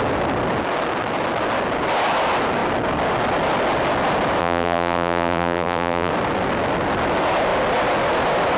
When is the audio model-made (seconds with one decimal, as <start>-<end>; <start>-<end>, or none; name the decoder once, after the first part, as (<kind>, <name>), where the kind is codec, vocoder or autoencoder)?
4.4-6.1 (vocoder, BigVGAN v2)